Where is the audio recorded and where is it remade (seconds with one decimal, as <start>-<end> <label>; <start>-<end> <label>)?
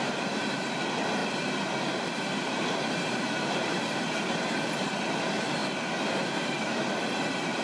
0.0-1.2 recorded; 1.2-3.7 remade; 3.7-7.6 recorded